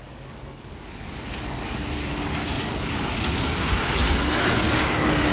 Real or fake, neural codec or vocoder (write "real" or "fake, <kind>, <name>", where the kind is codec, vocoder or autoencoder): fake, codec, DAC